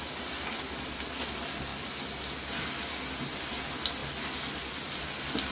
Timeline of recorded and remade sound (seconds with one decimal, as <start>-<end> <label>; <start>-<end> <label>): 0.0-5.5 recorded